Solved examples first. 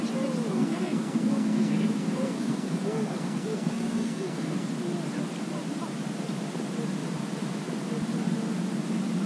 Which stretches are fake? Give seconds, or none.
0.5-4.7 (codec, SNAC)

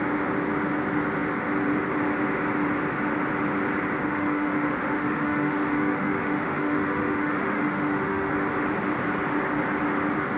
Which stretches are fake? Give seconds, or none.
4.1-8.3 (autoencoder, DAC-VAE)

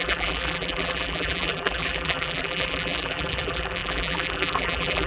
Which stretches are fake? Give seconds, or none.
0.0-5.1 (vocoder, BigVGAN v2)

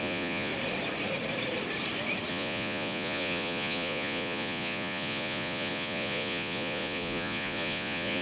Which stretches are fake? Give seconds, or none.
0.0-0.5 (vocoder, Vocos); 2.3-8.2